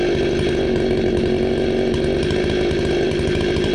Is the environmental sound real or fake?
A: real